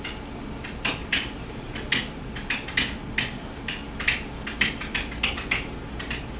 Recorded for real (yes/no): yes